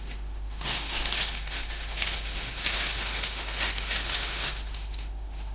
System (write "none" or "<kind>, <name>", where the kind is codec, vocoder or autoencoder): autoencoder, DAC-VAE